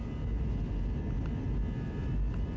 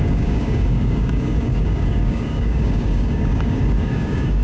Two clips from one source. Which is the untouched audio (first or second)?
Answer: first